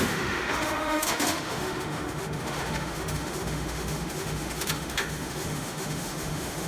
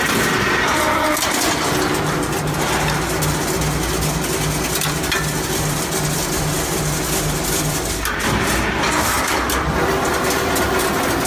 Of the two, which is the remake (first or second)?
first